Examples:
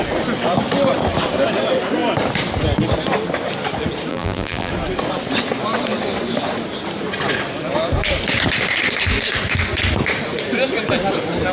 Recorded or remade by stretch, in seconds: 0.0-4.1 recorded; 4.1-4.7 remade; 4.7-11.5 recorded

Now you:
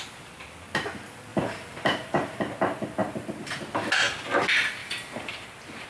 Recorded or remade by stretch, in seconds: 0.0-1.3 recorded; 1.3-2.4 remade; 2.4-3.0 recorded; 3.0-3.6 remade; 3.6-4.8 recorded; 4.8-5.9 remade

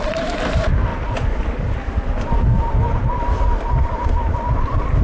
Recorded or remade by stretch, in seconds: 0.0-5.0 recorded

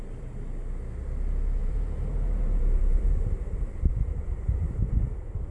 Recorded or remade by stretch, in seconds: 0.0-1.6 recorded; 1.6-4.9 remade; 4.9-5.5 recorded